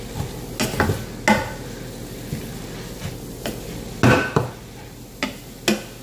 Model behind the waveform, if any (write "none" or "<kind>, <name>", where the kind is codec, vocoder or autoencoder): none